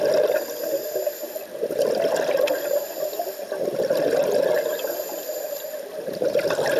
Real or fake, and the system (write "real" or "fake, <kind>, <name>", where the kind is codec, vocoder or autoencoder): real